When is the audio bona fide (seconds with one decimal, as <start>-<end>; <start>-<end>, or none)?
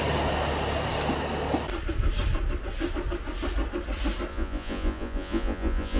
0.0-4.3